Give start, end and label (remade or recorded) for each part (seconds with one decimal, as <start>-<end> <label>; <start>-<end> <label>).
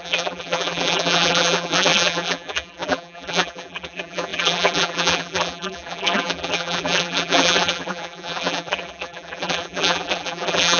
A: 0.0-10.8 remade